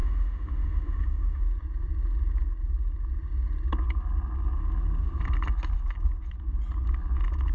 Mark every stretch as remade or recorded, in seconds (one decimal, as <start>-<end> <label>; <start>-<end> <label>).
0.0-1.4 remade; 1.4-7.5 recorded

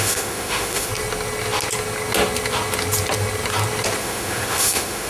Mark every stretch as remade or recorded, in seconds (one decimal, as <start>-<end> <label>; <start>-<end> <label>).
0.0-0.9 remade; 0.9-4.0 recorded; 4.0-5.1 remade

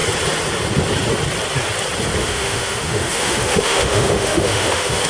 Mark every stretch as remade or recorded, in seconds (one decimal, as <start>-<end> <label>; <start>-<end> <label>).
0.0-2.2 recorded; 2.2-5.1 remade

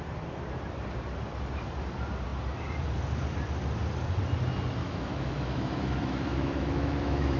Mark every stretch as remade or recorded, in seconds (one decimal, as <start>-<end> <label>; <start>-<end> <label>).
0.0-4.8 recorded; 4.8-7.4 remade